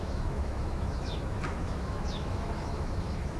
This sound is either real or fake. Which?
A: fake